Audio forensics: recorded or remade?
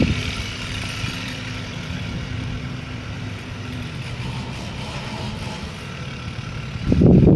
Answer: remade